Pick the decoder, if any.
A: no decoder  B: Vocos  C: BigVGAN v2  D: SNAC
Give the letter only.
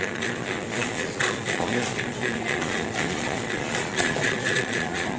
B